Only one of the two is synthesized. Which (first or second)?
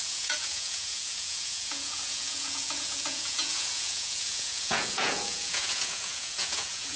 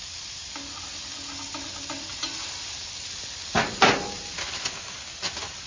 first